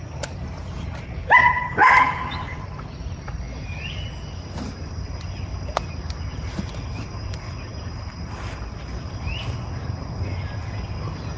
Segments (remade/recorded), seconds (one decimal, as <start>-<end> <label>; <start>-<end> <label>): 0.0-0.6 recorded; 0.6-2.3 remade; 2.3-7.1 recorded; 7.1-8.8 remade; 8.8-11.4 recorded